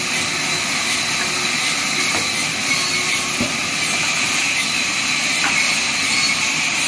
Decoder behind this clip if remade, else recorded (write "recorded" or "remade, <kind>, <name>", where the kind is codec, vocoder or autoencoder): recorded